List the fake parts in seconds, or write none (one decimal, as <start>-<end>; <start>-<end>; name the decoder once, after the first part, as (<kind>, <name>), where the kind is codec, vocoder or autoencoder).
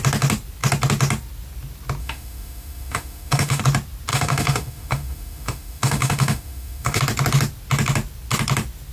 2.0-3.6 (autoencoder, DAC-VAE); 4.1-7.0